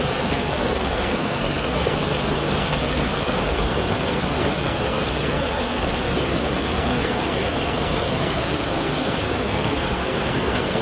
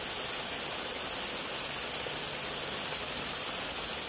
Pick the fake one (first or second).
first